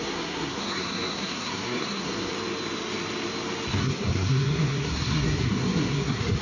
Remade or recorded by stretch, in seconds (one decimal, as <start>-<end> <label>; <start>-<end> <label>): 0.0-2.3 remade; 2.3-3.8 recorded; 3.8-6.4 remade